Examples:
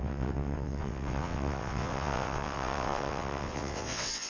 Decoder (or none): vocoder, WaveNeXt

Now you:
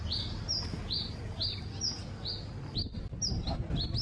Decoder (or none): none